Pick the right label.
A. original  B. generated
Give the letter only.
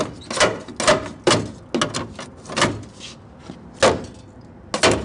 A